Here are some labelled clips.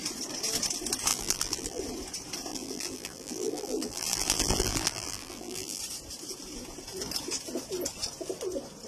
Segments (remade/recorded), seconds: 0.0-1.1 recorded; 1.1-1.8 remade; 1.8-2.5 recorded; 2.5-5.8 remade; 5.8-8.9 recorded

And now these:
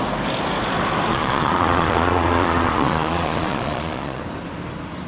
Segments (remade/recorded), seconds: 0.0-1.1 recorded; 1.1-4.2 remade; 4.2-5.1 recorded

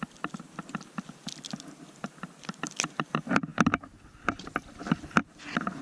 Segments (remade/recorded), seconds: 0.0-5.8 recorded

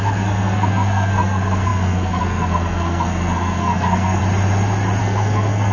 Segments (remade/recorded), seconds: 0.0-4.2 remade; 4.2-5.0 recorded; 5.0-5.7 remade